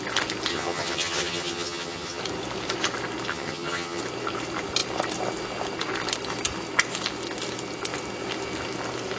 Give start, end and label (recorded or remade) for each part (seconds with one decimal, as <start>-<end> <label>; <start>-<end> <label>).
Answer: 0.0-0.5 recorded; 0.5-2.2 remade; 2.2-3.3 recorded; 3.3-4.0 remade; 4.0-9.2 recorded